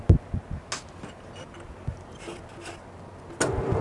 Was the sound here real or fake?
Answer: real